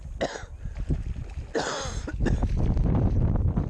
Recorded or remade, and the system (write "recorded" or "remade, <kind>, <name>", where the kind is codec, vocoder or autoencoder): recorded